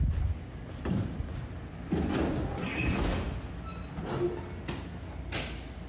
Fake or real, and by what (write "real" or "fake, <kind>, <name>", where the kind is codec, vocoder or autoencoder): real